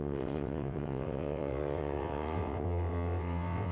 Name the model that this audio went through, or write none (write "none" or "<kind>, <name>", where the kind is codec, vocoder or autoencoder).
vocoder, WaveNeXt